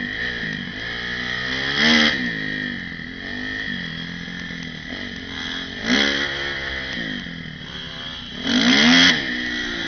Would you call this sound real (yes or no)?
yes